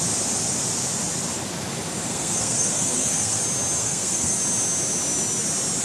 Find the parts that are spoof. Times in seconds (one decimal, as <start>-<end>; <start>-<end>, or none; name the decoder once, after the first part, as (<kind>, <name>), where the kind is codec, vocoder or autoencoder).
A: 2.1-3.4 (codec, SNAC); 3.8-4.4